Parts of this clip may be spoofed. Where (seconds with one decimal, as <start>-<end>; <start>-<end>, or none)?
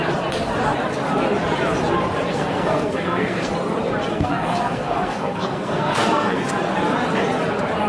2.3-3.5; 4.1-6.4